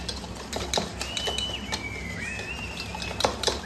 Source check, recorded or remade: recorded